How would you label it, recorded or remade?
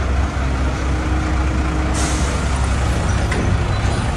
recorded